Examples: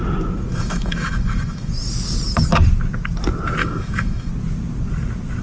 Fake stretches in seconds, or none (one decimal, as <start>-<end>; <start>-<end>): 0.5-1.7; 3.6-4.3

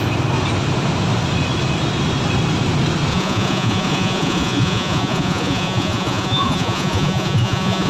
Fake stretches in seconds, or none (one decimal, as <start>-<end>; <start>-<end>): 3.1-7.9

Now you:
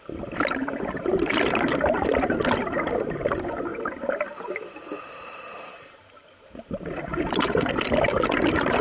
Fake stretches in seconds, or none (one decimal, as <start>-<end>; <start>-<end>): 0.6-1.3; 3.7-7.7